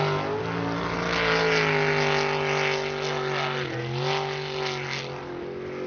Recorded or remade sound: recorded